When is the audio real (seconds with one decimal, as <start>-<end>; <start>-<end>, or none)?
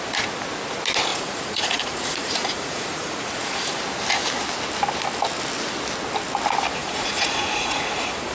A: 0.0-1.1; 3.8-6.8